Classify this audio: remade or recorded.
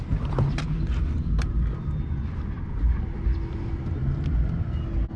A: recorded